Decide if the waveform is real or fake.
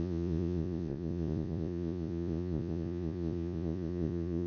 fake